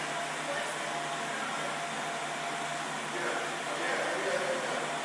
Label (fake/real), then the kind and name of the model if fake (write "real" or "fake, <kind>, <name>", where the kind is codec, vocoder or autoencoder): real